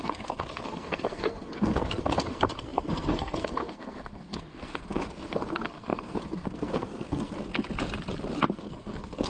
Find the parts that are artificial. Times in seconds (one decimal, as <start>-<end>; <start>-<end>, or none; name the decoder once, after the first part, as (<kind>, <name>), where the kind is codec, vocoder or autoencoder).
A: 0.0-7.5 (codec, SNAC); 8.5-9.3